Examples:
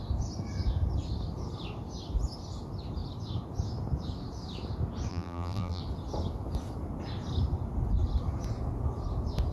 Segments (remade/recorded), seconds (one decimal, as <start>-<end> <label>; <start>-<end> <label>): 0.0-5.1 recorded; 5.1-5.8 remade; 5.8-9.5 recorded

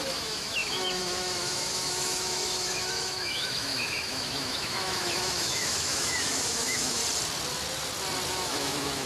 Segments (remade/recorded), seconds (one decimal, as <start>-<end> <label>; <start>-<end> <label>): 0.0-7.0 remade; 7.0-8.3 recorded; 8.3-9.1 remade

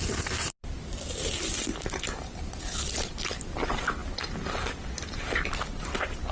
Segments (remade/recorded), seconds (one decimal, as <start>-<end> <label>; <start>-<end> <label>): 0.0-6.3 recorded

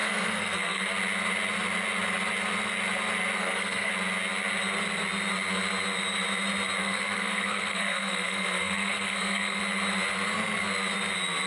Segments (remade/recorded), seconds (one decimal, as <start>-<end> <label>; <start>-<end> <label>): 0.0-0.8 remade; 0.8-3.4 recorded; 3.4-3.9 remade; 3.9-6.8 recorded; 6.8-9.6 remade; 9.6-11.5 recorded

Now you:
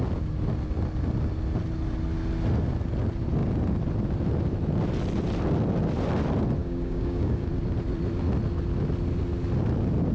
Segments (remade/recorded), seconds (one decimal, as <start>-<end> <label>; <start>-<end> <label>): 0.0-6.6 recorded; 6.6-7.5 remade; 7.5-10.1 recorded

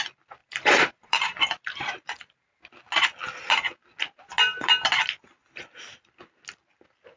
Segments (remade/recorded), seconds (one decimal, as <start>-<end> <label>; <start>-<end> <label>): 0.0-0.4 recorded; 0.4-2.6 remade; 2.6-7.2 recorded

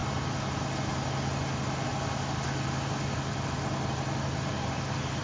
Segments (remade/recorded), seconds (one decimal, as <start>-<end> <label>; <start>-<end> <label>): 0.0-5.2 recorded